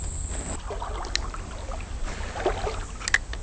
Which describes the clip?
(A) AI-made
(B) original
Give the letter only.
B